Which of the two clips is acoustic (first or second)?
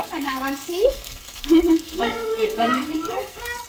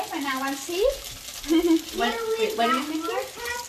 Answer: second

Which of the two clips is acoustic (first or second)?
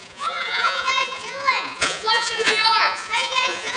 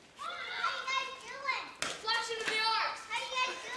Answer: second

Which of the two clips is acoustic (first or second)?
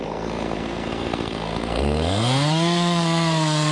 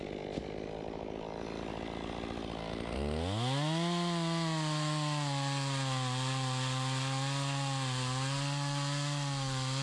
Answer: second